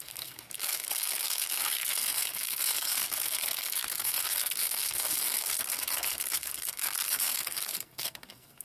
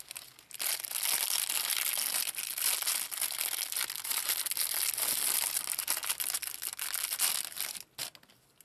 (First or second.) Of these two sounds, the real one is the second